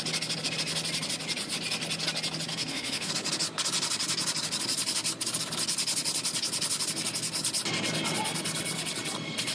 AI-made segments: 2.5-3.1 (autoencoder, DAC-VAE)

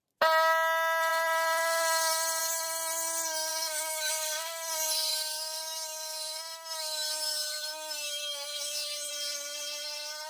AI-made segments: 3.5-4.1 (autoencoder, DAC-VAE); 5.1-9.1

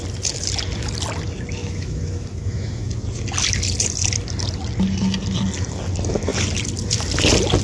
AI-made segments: 1.6-2.9 (autoencoder, DAC-VAE)